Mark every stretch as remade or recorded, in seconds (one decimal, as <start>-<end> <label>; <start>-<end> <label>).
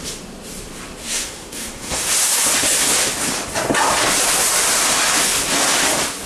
0.0-1.0 recorded; 1.0-2.0 remade; 2.0-6.3 recorded